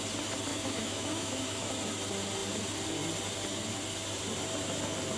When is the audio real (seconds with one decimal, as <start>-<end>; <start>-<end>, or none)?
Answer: 0.0-0.5; 1.7-5.2

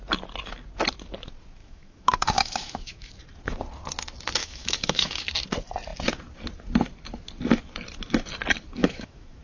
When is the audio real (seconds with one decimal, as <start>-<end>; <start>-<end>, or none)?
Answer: 0.0-1.6; 3.1-4.4; 5.3-8.8

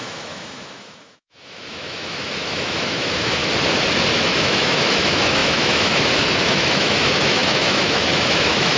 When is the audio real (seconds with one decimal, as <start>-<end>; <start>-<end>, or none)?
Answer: 3.4-4.1

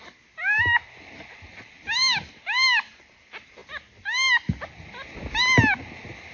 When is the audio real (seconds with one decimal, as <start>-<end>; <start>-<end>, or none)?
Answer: 0.0-6.3

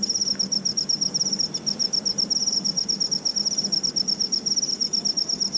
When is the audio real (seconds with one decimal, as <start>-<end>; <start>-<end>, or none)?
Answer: 0.0-5.6

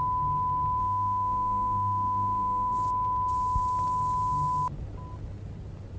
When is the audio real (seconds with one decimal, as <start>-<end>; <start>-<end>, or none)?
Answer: 0.0-0.8; 2.7-6.0